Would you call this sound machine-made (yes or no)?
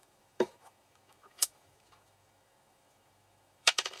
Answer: yes